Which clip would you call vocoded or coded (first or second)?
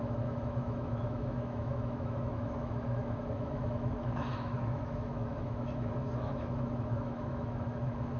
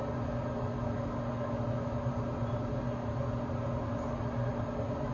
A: first